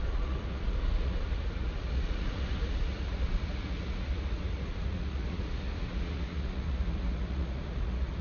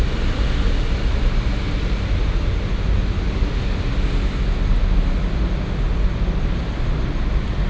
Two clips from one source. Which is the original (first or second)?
second